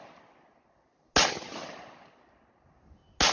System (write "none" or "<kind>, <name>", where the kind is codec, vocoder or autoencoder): none